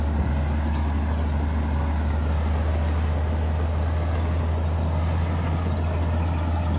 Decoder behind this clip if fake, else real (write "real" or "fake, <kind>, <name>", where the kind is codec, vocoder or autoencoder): real